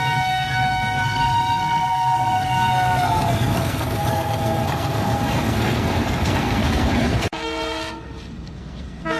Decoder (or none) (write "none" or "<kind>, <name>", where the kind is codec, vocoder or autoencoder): codec, SNAC